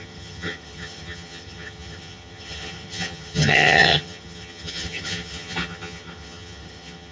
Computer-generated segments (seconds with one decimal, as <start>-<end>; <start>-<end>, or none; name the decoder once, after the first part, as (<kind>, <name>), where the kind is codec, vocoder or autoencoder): 0.0-7.1 (vocoder, HiFi-GAN)